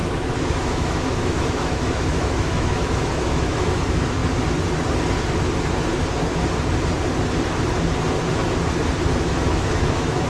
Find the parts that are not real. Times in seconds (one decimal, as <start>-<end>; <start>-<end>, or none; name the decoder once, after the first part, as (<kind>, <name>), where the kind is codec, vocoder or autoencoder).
0.0-4.2 (autoencoder, DAC-VAE); 9.2-10.3